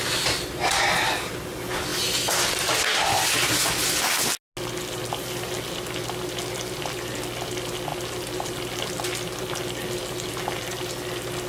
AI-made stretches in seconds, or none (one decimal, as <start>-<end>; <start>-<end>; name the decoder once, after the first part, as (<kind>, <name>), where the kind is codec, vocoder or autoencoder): none